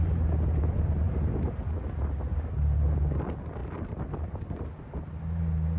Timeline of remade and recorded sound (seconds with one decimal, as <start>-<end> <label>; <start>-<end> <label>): 0.0-5.8 recorded